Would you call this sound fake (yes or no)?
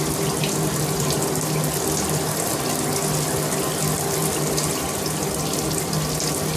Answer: no